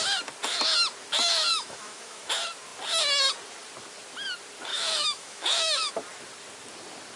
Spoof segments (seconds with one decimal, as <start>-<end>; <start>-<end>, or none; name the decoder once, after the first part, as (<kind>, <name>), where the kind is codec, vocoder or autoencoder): 1.5-2.3 (autoencoder, DAC-VAE); 4.7-5.9